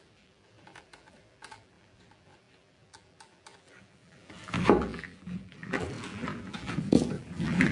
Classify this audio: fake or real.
fake